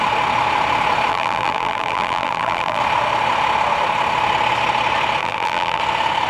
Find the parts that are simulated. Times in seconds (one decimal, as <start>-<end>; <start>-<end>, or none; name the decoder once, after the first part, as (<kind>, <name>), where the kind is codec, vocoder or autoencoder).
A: 1.1-2.8 (vocoder, BigVGAN v2); 5.2-5.8